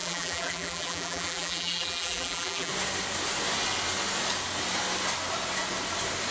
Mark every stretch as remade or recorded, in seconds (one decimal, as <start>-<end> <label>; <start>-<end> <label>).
0.0-2.7 remade; 2.7-6.3 recorded